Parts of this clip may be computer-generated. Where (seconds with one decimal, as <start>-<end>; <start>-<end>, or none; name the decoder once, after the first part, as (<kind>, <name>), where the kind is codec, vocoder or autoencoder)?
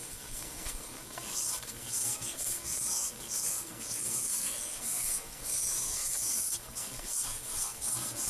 0.0-8.3 (codec, SNAC)